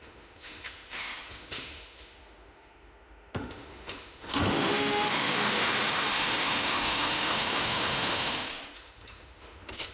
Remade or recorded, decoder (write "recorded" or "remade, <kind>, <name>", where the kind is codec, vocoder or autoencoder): remade, autoencoder, DAC-VAE